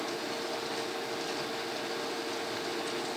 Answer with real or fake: real